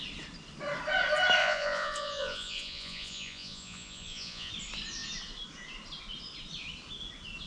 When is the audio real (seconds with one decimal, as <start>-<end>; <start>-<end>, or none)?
0.0-1.4; 4.5-7.5